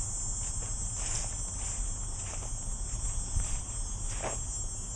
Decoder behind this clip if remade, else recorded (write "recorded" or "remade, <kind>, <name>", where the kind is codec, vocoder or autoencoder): recorded